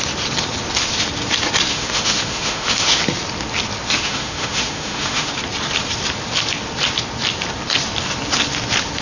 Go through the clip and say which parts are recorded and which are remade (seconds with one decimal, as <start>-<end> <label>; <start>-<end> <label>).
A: 0.0-1.7 recorded; 1.7-3.0 remade; 3.0-4.0 recorded; 4.0-5.3 remade; 5.3-9.0 recorded